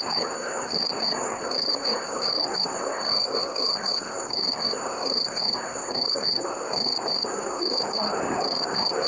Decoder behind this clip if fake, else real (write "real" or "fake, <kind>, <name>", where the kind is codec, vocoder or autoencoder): fake, codec, SNAC